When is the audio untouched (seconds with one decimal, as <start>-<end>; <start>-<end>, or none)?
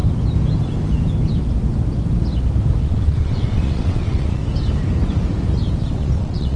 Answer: 0.0-2.8; 4.4-5.8